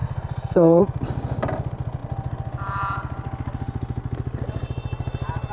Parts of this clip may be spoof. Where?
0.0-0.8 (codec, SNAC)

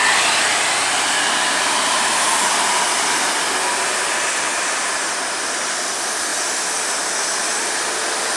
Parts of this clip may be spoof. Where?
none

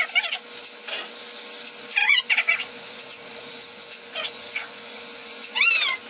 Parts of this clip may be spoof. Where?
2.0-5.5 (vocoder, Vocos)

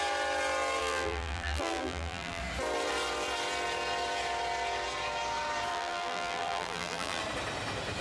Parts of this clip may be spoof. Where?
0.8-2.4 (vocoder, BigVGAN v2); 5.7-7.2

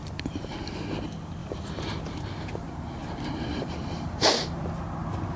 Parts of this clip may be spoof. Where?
0.0-0.7 (vocoder, BigVGAN v2); 1.4-4.6

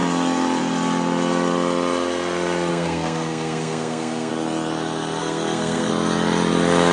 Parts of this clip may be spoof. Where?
2.7-4.3 (codec, SNAC); 5.2-5.9

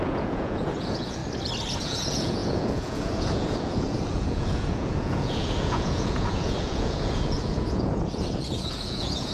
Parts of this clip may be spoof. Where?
0.0-1.2 (vocoder, Vocos); 1.8-9.3